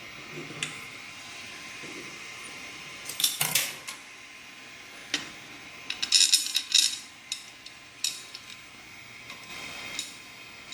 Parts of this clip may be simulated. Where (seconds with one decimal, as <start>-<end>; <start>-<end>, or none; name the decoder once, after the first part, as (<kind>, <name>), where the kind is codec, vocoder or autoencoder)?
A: 0.9-3.6 (vocoder, BigVGAN v2); 6.5-7.1; 9.5-10.0